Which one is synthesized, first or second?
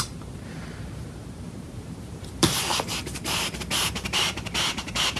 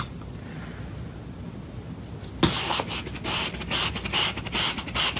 first